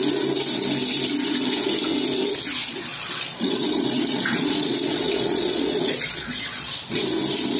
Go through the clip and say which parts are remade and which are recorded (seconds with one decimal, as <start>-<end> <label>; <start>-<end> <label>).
0.0-2.6 recorded; 2.6-7.0 remade; 7.0-7.6 recorded